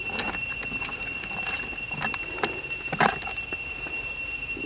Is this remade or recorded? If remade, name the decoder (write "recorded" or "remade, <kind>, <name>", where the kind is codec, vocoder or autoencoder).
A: recorded